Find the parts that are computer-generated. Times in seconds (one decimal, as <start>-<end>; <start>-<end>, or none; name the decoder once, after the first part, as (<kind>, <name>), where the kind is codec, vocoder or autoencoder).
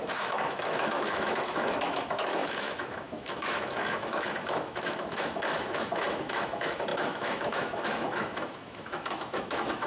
0.0-9.9 (autoencoder, DAC-VAE)